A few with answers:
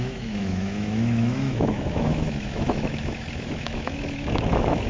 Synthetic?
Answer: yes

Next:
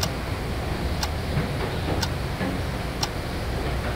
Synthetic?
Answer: no